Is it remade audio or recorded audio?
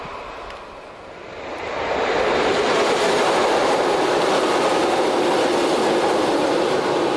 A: recorded